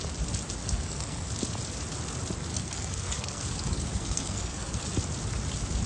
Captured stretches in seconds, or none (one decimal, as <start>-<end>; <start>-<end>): 0.0-0.6; 1.3-2.5; 4.8-5.9